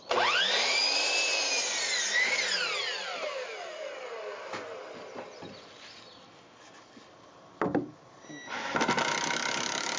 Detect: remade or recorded recorded